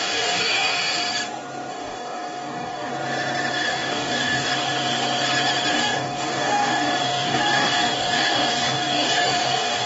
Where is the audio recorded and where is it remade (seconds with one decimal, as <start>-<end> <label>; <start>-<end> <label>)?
0.0-1.0 remade; 1.0-1.7 recorded; 1.7-2.9 remade; 2.9-3.5 recorded; 3.5-4.5 remade; 4.5-5.7 recorded; 5.7-9.9 remade